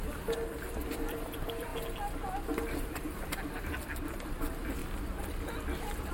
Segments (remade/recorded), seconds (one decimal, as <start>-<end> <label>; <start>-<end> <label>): 0.0-1.7 remade; 1.7-2.8 recorded; 2.8-4.8 remade; 4.8-6.1 recorded

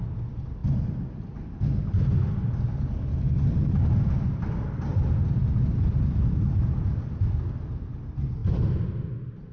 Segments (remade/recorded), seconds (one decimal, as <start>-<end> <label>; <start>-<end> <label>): 0.0-9.5 recorded

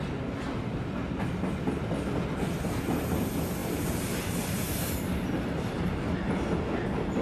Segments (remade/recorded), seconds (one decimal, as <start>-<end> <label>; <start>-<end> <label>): 0.0-3.6 recorded; 3.6-5.0 remade; 5.0-7.2 recorded

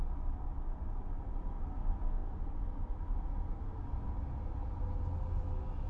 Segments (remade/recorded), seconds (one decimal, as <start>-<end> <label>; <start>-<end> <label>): 0.0-2.2 recorded; 2.2-3.8 remade; 3.8-5.9 recorded

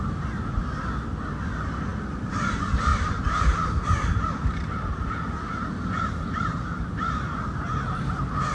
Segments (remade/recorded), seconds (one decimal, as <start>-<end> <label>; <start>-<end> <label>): 0.0-2.9 recorded; 2.9-8.0 remade; 8.0-8.5 recorded

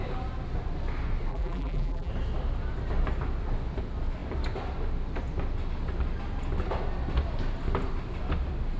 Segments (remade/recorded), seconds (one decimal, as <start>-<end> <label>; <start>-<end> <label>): 0.0-1.3 recorded; 1.3-2.1 remade; 2.1-8.8 recorded